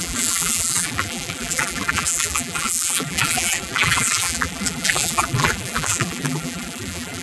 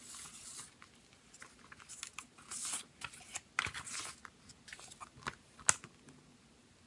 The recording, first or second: second